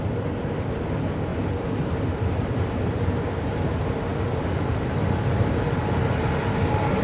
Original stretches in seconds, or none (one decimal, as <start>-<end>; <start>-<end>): 0.0-7.0